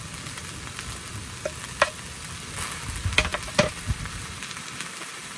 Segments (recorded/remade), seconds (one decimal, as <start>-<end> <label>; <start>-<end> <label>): 0.0-3.3 recorded; 3.3-5.4 remade